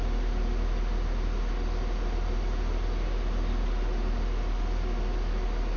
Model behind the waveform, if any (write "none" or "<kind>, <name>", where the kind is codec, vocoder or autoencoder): none